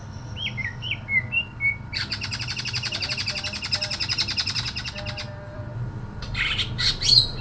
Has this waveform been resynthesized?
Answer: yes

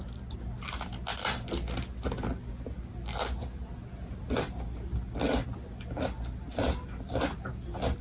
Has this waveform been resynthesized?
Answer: no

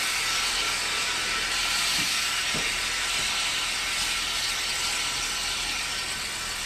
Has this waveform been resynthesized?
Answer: no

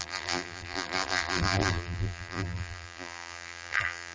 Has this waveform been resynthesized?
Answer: yes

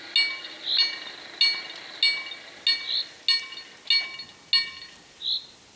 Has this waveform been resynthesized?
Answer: no